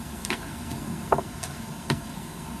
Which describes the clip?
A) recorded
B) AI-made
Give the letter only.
B